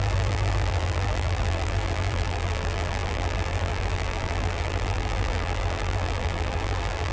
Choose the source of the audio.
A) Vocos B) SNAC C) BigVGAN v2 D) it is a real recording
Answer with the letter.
C